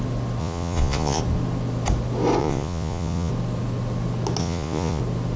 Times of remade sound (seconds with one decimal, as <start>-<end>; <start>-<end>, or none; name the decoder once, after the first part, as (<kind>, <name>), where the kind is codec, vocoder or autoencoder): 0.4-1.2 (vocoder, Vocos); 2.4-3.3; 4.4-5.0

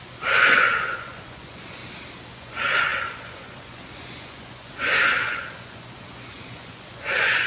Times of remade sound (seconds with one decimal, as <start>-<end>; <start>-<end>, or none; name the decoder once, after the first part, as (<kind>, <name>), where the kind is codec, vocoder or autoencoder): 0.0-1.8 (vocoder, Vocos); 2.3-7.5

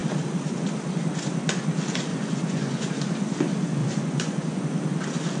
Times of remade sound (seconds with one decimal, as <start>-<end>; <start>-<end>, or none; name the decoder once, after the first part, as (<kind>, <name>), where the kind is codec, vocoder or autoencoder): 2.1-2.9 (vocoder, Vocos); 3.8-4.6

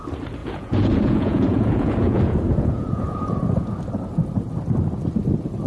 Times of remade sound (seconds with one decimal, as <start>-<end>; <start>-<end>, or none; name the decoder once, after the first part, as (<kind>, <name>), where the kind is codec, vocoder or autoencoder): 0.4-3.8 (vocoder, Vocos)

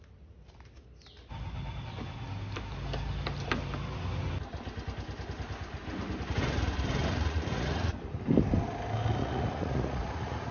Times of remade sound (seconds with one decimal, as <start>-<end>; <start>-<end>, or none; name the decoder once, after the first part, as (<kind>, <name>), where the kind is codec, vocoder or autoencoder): 7.0-8.0 (vocoder, Vocos); 9.2-10.5

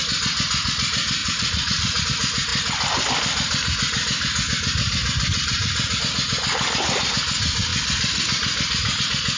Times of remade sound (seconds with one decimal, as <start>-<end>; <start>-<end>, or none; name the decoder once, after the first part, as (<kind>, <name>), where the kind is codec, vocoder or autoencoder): 1.2-2.0 (vocoder, Vocos)